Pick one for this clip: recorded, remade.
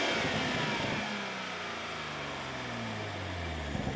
recorded